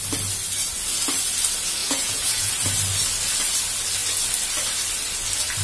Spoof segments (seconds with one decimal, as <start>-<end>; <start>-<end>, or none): 1.8-2.5